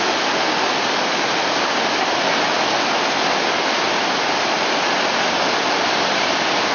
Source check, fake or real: real